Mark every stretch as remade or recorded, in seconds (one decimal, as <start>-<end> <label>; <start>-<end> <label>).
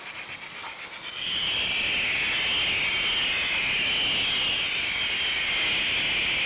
0.0-6.5 recorded